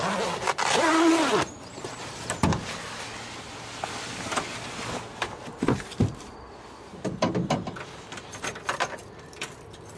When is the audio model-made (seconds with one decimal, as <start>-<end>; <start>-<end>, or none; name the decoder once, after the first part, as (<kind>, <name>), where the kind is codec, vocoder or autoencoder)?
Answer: none